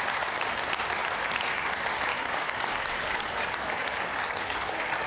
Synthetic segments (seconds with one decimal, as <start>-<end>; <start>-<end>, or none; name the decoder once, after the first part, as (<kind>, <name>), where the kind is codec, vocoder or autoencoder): 2.1-5.1 (codec, DAC)